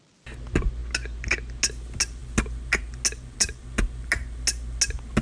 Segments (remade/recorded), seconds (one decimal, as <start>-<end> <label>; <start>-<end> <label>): 0.0-5.2 recorded